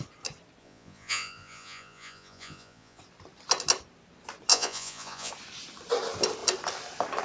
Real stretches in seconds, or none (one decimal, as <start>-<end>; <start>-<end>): 0.0-0.6; 3.0-4.5; 5.3-7.2